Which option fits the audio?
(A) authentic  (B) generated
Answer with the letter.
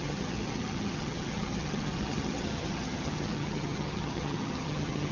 B